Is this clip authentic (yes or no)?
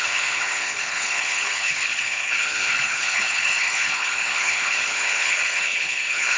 no